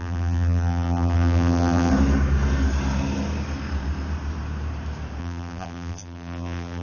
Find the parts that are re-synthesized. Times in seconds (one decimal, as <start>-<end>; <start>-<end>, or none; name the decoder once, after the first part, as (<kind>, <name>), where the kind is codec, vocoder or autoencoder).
0.0-1.9 (vocoder, BigVGAN v2); 5.2-6.8